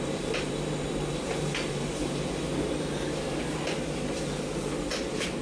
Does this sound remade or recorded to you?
remade